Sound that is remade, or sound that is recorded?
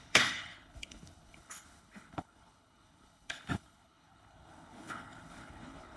remade